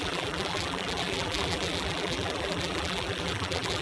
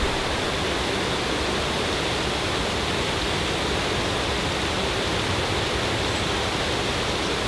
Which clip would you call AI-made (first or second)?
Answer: first